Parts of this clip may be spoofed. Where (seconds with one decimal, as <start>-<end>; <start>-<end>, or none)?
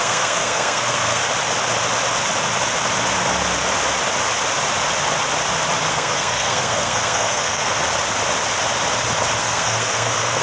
0.0-1.2; 5.9-7.8; 9.4-10.4